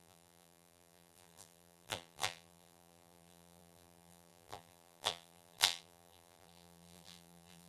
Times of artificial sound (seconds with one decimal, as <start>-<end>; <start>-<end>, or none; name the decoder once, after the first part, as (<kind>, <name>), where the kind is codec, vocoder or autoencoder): 0.0-7.7 (vocoder, BigVGAN v2)